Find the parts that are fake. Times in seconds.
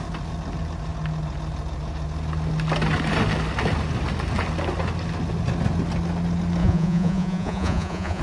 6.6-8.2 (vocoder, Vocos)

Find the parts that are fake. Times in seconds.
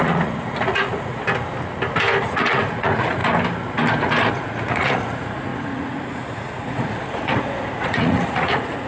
0.0-1.2 (vocoder, Vocos); 2.2-3.2; 4.3-8.9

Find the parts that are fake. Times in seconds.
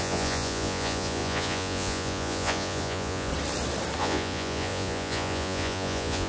0.0-3.3 (vocoder, Vocos); 4.0-6.3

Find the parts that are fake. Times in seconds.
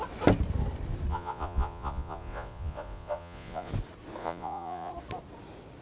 1.1-3.7 (vocoder, Vocos); 4.2-4.9